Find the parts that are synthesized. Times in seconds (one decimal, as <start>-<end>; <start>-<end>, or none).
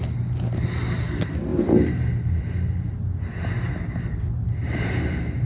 1.5-2.4; 4.6-5.5